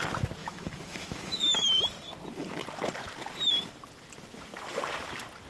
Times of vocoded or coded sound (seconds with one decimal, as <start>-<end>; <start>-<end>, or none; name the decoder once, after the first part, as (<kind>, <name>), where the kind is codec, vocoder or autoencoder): 0.4-1.8 (autoencoder, DAC-VAE)